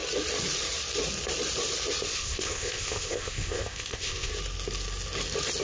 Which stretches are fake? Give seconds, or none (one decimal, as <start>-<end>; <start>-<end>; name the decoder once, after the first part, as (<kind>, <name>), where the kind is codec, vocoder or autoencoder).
2.1-4.3 (codec, ZipCodec)